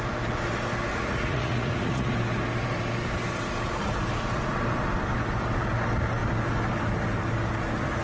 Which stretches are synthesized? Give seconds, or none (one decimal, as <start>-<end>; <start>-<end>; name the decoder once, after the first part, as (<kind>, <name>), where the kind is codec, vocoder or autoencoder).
0.9-2.1 (vocoder, Vocos)